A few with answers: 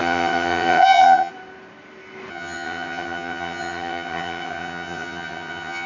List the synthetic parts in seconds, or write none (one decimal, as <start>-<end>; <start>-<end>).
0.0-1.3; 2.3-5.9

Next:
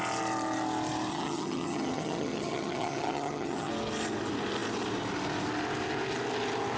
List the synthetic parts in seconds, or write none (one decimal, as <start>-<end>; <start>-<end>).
1.1-3.7

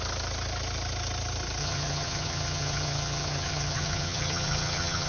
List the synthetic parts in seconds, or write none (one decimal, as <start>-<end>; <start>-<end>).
1.6-5.1

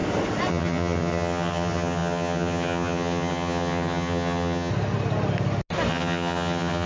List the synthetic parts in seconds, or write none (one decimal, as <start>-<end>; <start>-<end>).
0.5-4.7; 5.9-6.9

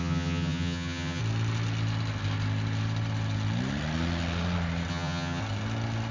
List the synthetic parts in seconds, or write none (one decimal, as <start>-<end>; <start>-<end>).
0.0-1.2; 4.9-5.4